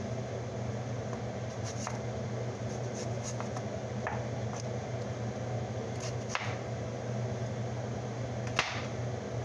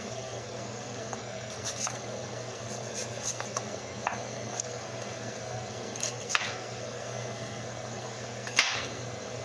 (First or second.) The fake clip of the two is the second